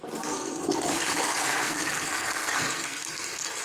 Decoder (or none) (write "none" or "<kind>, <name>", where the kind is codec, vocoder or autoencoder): codec, SNAC